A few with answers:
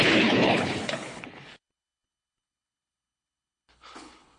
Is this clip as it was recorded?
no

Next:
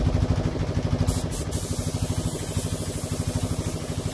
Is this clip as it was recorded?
yes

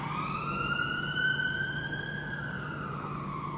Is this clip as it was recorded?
yes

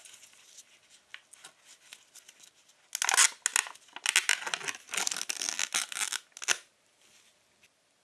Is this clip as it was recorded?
yes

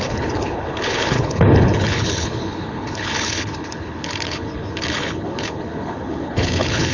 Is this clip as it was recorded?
no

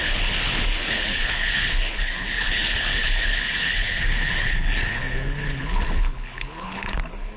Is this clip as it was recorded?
no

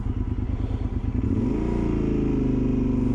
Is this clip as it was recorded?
yes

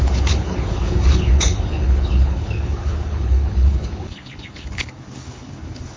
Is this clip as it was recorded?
no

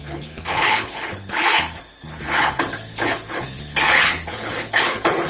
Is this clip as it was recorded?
no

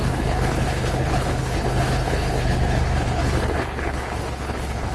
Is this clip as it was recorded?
no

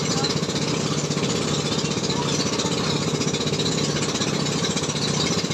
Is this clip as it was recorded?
yes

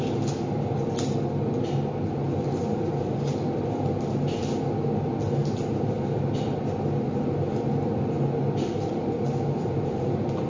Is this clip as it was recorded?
yes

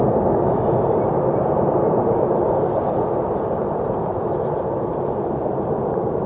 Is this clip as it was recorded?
yes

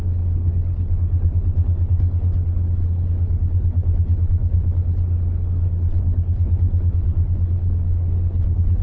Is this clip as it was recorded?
no